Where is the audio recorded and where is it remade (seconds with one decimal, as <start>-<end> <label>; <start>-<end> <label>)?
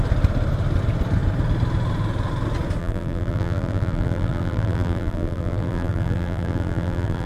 0.0-2.8 recorded; 2.8-7.3 remade